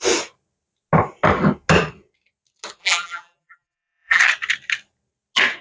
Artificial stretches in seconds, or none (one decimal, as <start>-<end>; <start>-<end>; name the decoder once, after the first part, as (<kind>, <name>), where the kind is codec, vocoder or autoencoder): 2.8-4.2 (vocoder, BigVGAN v2)